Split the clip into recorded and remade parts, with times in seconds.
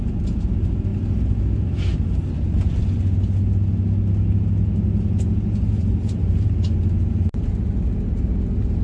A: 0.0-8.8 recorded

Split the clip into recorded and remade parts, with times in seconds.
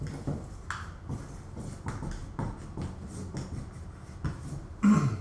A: 0.0-5.2 recorded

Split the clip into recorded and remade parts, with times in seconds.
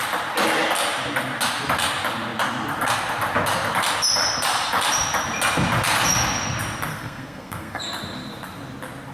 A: 0.0-6.9 recorded; 6.9-7.8 remade; 7.8-9.1 recorded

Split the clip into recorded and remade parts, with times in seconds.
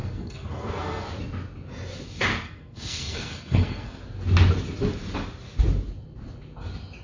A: 0.0-1.1 remade; 1.1-2.3 recorded; 2.3-4.0 remade; 4.0-7.0 recorded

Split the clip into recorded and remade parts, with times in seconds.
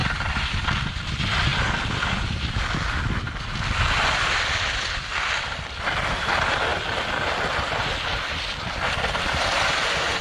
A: 0.0-10.2 recorded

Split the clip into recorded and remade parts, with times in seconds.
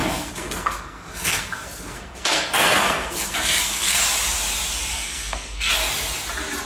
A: 0.0-4.0 remade; 4.0-4.9 recorded; 4.9-5.7 remade; 5.7-6.7 recorded